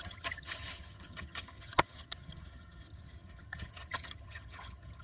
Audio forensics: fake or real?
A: fake